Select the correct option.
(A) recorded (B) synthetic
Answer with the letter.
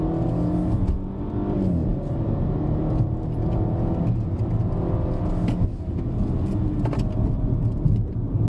A